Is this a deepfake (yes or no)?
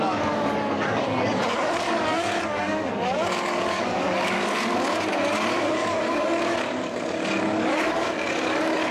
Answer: yes